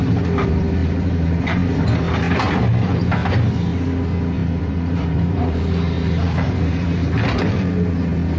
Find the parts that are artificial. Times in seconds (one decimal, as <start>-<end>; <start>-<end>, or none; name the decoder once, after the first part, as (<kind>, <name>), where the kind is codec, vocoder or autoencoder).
0.8-1.8 (vocoder, BigVGAN v2); 4.4-7.7